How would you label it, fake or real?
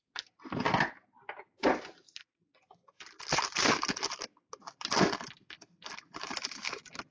real